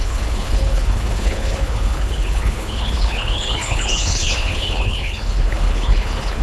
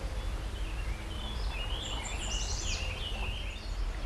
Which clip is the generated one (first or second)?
first